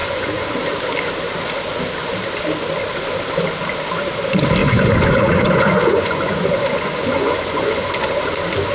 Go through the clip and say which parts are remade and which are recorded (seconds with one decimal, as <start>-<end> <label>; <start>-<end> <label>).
0.0-0.5 remade; 0.5-4.6 recorded; 4.6-8.1 remade; 8.1-8.7 recorded